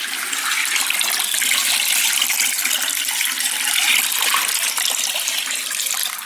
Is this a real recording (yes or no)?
yes